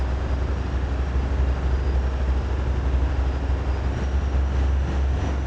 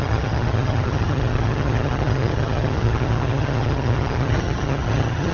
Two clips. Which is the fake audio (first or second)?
second